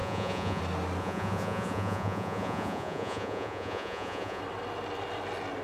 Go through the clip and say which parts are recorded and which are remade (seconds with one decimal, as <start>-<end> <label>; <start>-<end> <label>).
0.0-0.6 remade; 0.6-1.0 recorded; 1.0-4.4 remade; 4.4-5.6 recorded